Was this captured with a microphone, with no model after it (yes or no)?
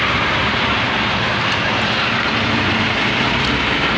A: yes